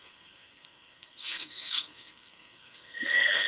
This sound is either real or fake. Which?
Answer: fake